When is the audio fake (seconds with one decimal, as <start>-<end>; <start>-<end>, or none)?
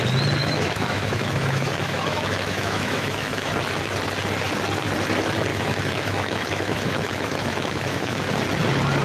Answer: 0.4-3.5; 5.5-8.3